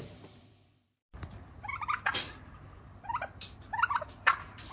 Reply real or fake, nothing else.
fake